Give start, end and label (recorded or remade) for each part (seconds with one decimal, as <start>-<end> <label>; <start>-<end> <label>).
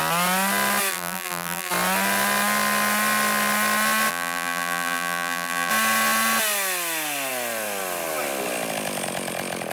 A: 0.0-0.9 recorded; 0.9-1.7 remade; 1.7-4.1 recorded; 4.1-5.7 remade; 5.7-9.7 recorded